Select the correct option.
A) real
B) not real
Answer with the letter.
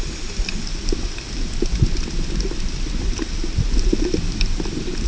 A